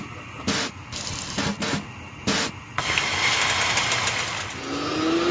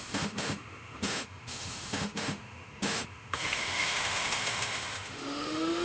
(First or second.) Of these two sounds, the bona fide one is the first